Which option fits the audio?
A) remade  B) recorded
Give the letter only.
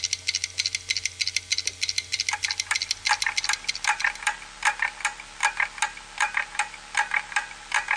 B